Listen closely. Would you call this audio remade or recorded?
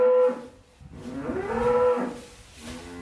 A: recorded